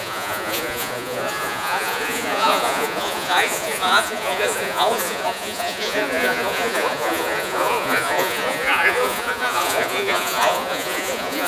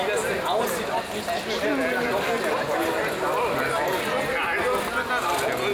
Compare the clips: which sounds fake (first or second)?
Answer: first